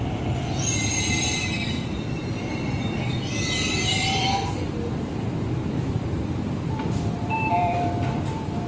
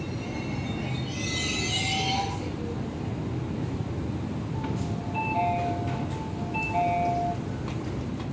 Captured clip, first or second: second